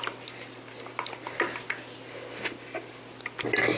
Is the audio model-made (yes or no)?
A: no